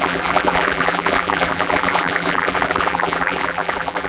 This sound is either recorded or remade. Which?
remade